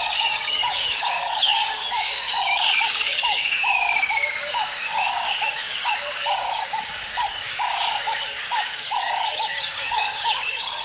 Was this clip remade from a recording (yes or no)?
yes